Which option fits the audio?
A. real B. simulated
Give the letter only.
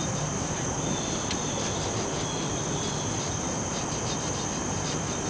B